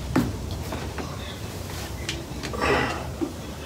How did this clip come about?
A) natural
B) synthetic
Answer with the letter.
B